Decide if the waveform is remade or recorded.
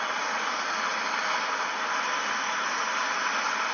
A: recorded